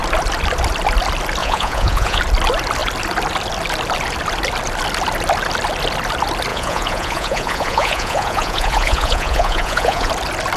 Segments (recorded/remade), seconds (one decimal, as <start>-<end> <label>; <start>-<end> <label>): 0.0-1.4 recorded; 1.4-2.2 remade; 2.2-6.5 recorded; 6.5-10.1 remade; 10.1-10.6 recorded